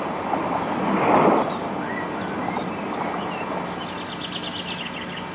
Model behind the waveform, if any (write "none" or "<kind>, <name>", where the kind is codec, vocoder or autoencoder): none